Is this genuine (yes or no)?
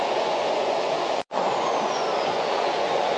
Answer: no